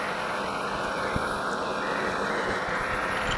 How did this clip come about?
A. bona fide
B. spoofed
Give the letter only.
A